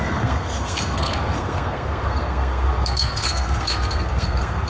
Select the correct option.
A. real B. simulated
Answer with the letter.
B